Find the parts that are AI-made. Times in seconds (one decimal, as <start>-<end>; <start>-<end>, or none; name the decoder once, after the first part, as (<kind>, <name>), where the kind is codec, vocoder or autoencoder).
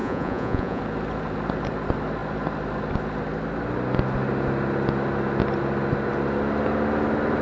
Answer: 0.0-0.8 (vocoder, Vocos)